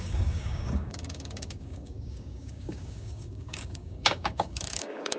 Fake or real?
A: fake